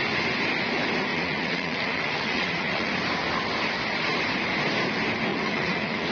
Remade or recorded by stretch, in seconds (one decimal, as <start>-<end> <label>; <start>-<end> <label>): 0.0-1.1 recorded; 1.1-2.9 remade; 2.9-5.3 recorded; 5.3-6.1 remade